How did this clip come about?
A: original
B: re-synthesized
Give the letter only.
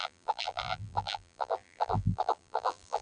B